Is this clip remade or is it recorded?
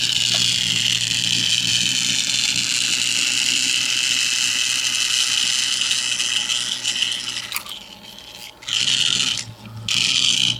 recorded